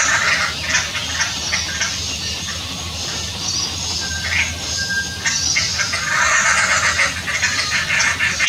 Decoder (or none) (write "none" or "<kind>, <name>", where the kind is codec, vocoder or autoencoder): none